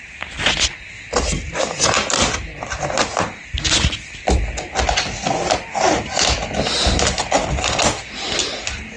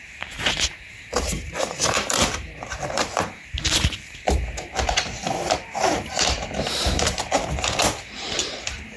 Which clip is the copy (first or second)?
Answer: second